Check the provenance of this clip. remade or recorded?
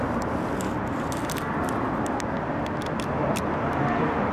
recorded